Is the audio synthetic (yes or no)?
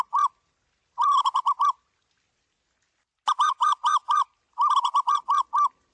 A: no